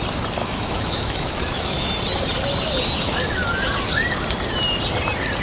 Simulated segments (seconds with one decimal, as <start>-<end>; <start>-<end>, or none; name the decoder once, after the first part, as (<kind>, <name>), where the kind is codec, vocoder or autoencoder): 0.4-2.0 (autoencoder, DAC-VAE)